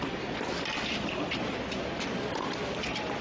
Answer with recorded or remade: recorded